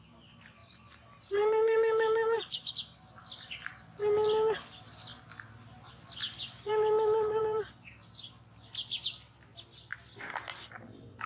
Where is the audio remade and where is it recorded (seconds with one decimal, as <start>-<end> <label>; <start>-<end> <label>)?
0.0-0.6 recorded; 0.6-2.7 remade; 2.7-11.3 recorded